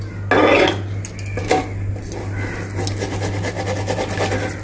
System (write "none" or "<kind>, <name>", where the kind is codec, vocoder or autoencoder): none